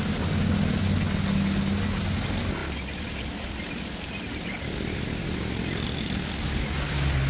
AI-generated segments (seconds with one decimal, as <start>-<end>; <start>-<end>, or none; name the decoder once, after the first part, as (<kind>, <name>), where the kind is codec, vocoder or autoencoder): none